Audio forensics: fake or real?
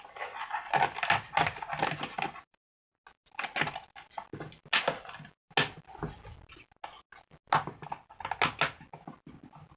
real